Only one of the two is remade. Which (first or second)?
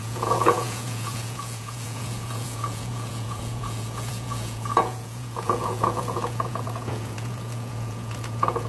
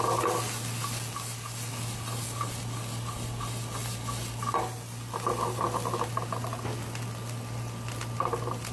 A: first